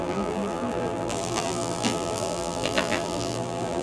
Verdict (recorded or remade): remade